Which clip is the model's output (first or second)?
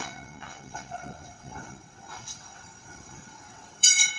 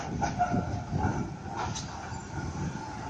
first